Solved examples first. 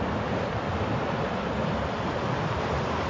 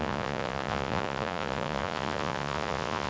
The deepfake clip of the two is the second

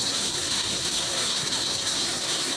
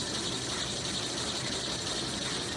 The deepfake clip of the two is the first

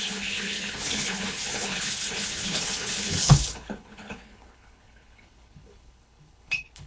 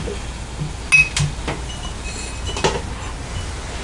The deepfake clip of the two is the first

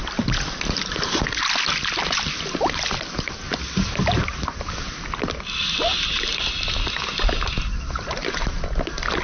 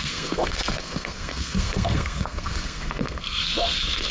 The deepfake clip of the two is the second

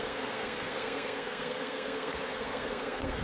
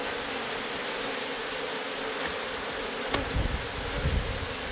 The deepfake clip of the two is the first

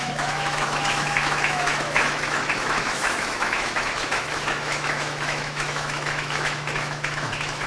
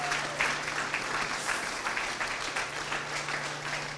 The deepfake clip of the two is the first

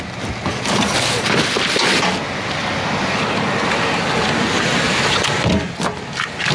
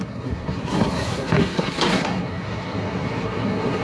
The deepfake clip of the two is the second